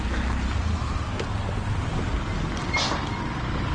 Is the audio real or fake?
real